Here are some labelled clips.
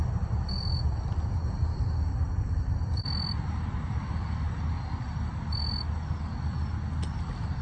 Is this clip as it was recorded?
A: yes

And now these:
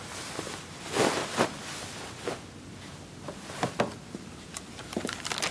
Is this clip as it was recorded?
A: yes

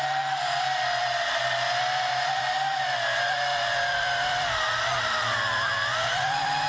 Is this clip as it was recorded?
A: no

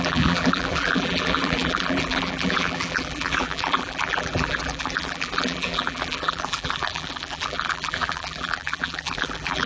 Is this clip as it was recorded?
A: no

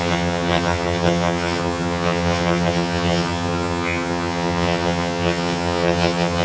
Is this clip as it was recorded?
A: no